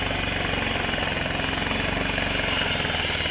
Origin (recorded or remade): recorded